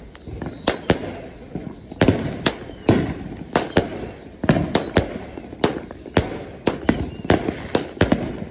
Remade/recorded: recorded